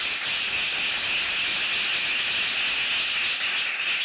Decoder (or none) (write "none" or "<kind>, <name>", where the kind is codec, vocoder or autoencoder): none